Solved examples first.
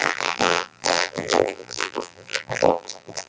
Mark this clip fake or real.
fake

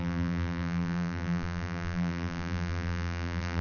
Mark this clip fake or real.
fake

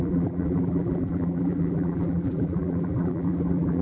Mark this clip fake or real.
fake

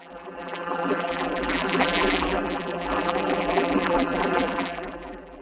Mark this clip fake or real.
fake